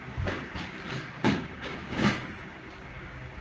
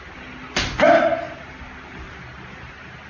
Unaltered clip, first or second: second